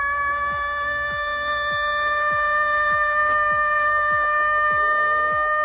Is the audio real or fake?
real